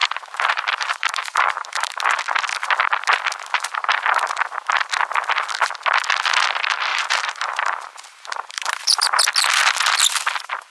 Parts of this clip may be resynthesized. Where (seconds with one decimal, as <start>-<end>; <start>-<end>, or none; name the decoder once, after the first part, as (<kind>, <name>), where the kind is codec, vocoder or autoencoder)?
0.0-1.9 (vocoder, BigVGAN v2); 6.9-9.2